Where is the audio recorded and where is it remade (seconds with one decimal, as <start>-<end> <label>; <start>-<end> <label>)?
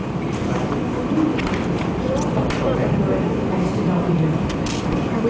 0.0-5.3 remade